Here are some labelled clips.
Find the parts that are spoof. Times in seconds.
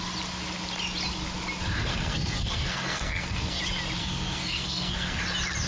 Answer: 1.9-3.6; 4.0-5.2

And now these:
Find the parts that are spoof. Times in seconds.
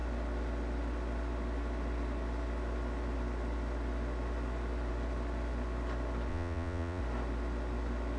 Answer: 6.3-7.0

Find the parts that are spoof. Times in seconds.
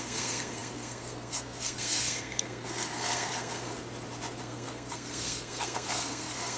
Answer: 0.0-3.7; 4.4-6.6